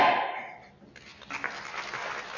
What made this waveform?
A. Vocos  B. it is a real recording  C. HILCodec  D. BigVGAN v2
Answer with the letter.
B